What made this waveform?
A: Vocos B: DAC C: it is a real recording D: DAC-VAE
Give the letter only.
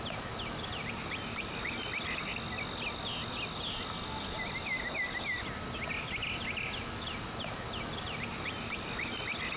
C